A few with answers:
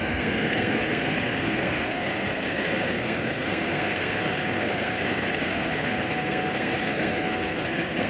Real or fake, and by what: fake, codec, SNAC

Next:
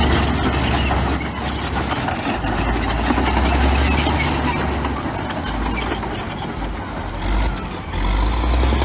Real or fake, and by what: real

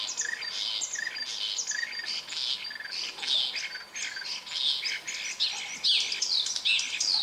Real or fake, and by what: real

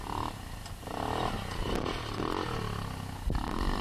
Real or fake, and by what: real